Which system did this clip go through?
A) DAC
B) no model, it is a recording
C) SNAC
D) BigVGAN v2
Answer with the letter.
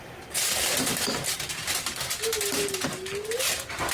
B